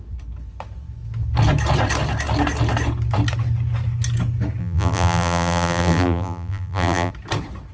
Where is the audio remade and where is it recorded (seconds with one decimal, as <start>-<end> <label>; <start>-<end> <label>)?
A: 0.0-4.6 recorded; 4.6-7.1 remade; 7.1-7.7 recorded